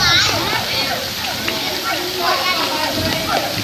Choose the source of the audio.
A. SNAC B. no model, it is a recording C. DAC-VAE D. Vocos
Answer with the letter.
B